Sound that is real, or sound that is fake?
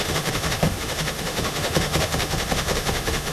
fake